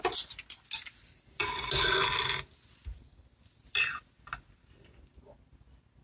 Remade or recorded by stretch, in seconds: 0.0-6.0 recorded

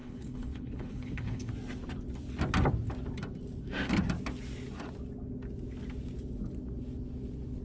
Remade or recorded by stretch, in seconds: 0.0-1.5 remade; 1.5-7.6 recorded

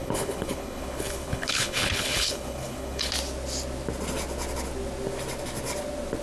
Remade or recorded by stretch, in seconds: 0.0-3.1 remade; 3.1-6.2 recorded

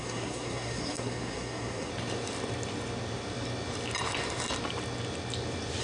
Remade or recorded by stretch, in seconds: 0.0-1.9 remade; 1.9-5.8 recorded

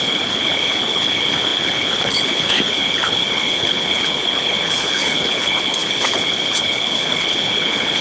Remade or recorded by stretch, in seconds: 0.0-8.0 remade

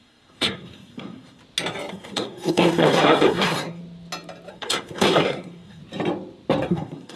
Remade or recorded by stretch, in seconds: 0.0-1.4 remade; 1.4-1.9 recorded; 1.9-3.8 remade; 3.8-4.5 recorded; 4.5-5.8 remade; 5.8-6.7 recorded; 6.7-7.2 remade